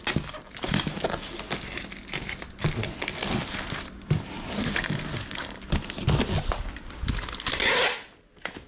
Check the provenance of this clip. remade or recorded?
recorded